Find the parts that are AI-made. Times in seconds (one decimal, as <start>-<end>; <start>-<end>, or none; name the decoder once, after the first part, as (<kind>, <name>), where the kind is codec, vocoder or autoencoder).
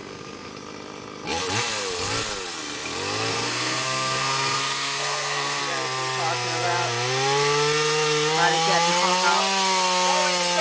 0.0-0.5 (codec, SNAC); 3.3-5.6